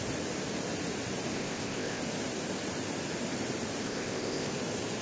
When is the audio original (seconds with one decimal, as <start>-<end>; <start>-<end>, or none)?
0.0-1.3; 2.0-3.8; 4.5-5.0